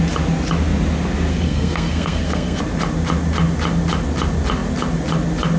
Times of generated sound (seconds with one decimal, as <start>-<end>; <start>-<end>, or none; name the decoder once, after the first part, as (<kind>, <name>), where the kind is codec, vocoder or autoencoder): 1.3-2.6 (codec, SNAC)